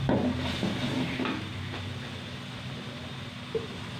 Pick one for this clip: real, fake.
real